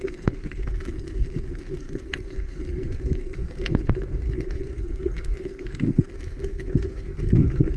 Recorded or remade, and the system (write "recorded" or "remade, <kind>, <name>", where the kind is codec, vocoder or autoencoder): remade, codec, SNAC